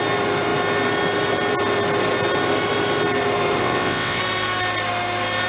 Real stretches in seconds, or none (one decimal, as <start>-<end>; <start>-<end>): 0.0-3.6; 4.2-5.5

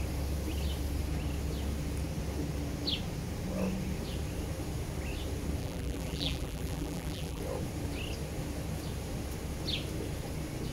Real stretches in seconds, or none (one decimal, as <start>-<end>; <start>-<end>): 0.0-5.6; 7.4-10.7

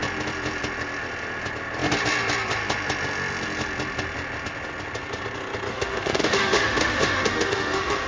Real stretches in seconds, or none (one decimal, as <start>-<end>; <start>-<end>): 0.0-5.7

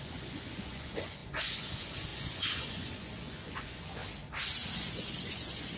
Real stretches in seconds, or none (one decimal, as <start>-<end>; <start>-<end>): 4.0-4.7